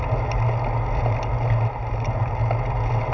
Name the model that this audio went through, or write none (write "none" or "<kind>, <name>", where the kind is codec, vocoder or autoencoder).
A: none